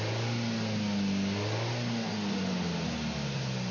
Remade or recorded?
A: recorded